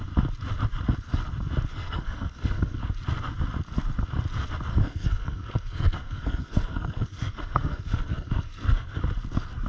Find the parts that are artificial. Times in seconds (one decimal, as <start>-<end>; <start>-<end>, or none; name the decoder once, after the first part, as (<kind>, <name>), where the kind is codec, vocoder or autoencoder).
1.7-2.8 (codec, SNAC); 4.7-9.0